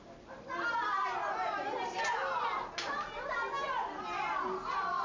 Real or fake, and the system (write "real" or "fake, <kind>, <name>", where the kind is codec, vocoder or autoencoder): real